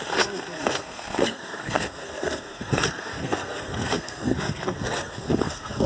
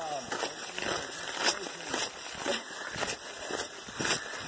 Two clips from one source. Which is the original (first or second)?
second